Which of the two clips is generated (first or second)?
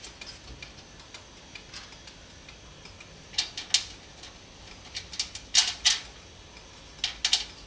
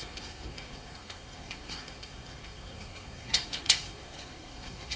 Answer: second